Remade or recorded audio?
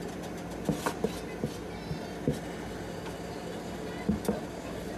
recorded